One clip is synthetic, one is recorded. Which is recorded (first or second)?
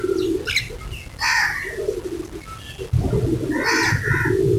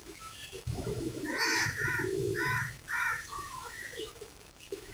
first